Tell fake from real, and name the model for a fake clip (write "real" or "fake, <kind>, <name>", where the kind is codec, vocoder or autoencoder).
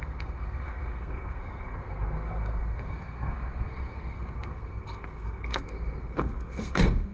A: fake, codec, SNAC